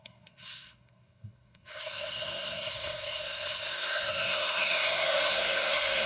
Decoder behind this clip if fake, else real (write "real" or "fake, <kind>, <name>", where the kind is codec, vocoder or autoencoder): fake, codec, SNAC